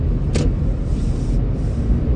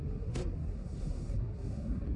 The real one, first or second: first